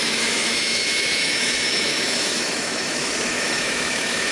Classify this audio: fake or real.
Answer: fake